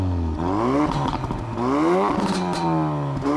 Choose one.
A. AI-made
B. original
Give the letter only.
B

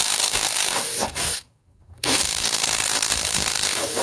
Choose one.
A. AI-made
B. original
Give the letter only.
A